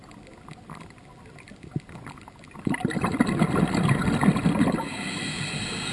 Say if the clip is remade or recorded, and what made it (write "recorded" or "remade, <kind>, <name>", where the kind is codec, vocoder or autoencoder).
recorded